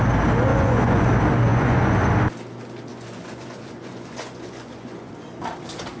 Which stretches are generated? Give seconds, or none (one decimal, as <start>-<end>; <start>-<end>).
0.5-1.1; 1.5-2.1; 2.9-5.1